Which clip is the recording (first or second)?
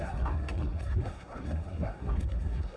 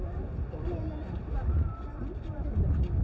second